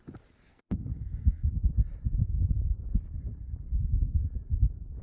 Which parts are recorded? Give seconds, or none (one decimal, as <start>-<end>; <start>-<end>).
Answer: 0.0-0.5; 1.7-5.0